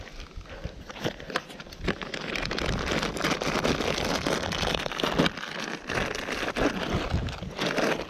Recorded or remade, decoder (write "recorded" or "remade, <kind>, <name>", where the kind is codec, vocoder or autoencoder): recorded